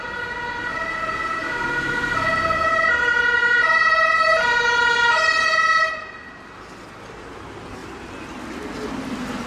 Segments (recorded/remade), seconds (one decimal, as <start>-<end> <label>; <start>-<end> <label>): 0.0-9.5 recorded